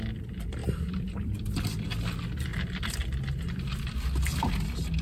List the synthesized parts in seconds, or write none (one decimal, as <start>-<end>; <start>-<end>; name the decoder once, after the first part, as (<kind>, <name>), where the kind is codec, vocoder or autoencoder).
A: 0.6-1.8 (vocoder, BigVGAN v2); 2.5-3.6